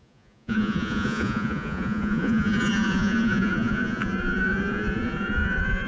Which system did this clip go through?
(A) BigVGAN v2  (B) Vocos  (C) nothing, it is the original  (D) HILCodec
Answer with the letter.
B